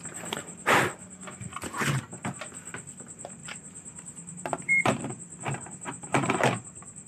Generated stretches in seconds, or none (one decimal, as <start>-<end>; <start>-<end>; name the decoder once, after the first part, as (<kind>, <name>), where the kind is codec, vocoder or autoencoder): 3.4-7.1 (vocoder, BigVGAN v2)